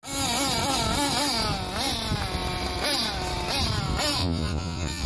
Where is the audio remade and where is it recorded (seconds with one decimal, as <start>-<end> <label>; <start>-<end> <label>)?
0.0-4.2 recorded; 4.2-5.1 remade